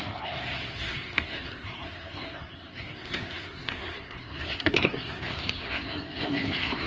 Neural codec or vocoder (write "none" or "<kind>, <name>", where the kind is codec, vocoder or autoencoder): codec, SNAC